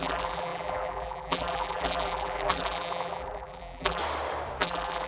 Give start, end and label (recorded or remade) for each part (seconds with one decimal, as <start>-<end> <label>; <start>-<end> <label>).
0.0-4.0 remade; 4.0-4.6 recorded; 4.6-5.1 remade